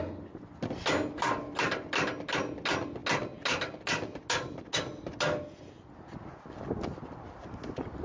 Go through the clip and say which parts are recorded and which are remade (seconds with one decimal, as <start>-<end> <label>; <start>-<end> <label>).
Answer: 0.0-8.0 recorded